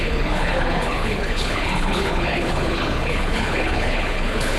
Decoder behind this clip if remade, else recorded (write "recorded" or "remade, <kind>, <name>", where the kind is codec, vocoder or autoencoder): remade, codec, HILCodec